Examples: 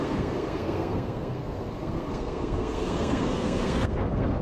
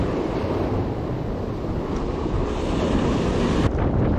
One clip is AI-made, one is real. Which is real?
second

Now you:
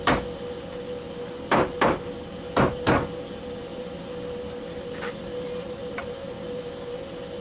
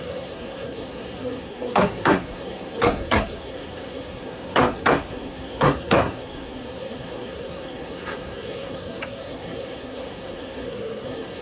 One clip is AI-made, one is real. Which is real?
first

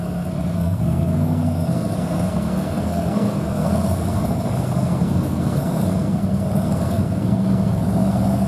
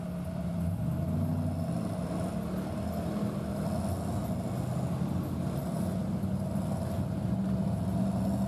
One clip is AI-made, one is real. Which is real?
second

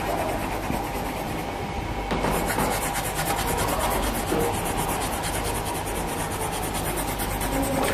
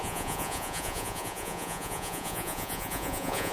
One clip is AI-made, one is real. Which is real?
first